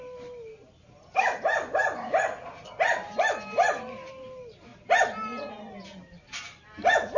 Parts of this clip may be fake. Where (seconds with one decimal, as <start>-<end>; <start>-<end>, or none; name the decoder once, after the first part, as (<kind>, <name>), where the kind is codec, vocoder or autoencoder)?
none